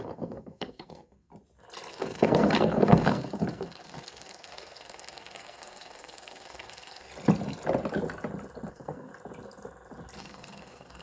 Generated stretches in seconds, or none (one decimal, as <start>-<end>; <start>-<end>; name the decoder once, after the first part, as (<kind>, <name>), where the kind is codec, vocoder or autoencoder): 0.0-1.3 (codec, SNAC); 1.9-7.1; 8.7-9.1; 10.2-11.0